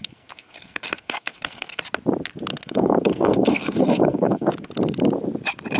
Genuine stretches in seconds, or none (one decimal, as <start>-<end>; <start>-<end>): 1.8-2.5; 4.5-5.8